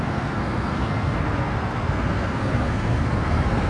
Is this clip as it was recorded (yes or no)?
no